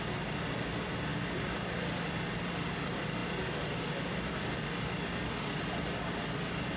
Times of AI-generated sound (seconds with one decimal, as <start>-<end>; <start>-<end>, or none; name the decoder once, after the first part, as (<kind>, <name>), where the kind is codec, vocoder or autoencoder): none